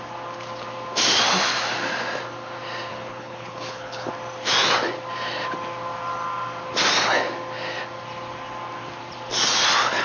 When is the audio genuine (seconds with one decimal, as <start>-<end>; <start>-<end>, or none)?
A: 0.0-2.9; 4.1-10.0